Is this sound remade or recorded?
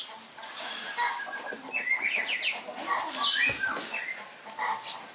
recorded